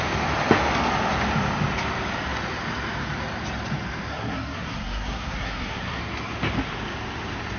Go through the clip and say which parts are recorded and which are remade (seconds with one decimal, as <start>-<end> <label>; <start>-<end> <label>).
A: 0.0-4.1 recorded; 4.1-6.0 remade; 6.0-7.6 recorded